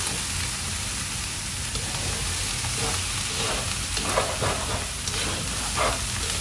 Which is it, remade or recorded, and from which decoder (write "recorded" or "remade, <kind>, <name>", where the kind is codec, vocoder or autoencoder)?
recorded